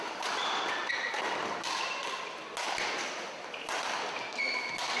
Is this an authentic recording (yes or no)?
yes